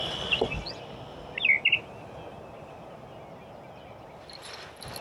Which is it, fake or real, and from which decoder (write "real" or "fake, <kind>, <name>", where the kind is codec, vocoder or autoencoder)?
real